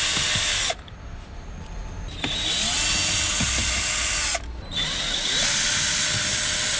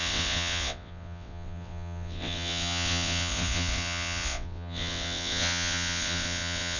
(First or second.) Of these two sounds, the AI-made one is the second